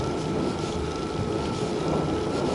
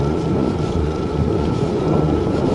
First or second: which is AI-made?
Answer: second